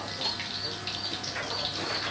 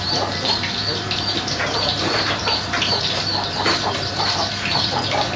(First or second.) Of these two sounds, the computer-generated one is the second